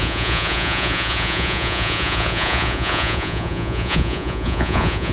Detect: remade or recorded remade